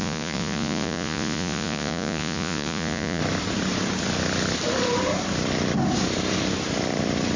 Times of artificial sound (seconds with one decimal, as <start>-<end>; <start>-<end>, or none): 0.0-3.2